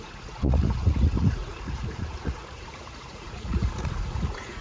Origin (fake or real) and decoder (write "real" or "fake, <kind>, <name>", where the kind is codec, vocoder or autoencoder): fake, vocoder, Vocos